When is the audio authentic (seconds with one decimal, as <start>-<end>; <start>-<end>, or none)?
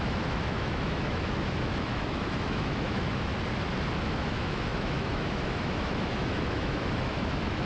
3.3-4.0